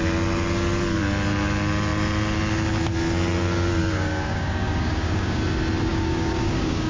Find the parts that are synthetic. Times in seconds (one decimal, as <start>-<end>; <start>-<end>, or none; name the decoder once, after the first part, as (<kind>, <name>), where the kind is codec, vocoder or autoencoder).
3.8-5.4 (codec, DAC); 5.9-6.9